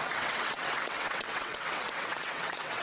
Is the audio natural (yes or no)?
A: no